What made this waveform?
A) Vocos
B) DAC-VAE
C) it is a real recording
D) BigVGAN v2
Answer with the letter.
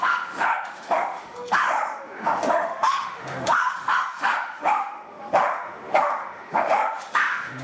B